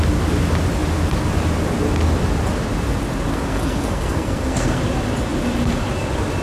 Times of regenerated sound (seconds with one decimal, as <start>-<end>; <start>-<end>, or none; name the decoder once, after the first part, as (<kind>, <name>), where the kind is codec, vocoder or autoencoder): 3.3-4.8 (codec, SNAC)